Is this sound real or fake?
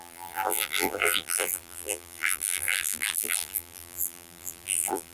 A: fake